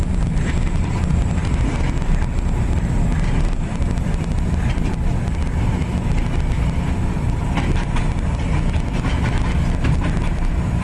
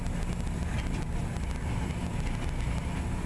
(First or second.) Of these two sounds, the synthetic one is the first